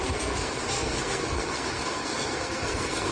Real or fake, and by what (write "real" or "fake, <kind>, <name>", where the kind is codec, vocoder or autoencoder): fake, codec, SNAC